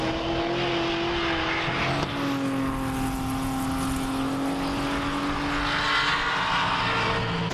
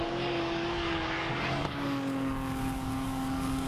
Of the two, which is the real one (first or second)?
first